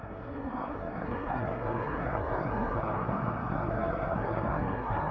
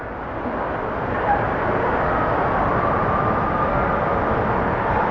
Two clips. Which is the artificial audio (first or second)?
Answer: first